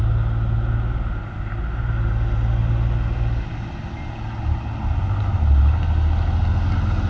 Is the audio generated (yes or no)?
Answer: no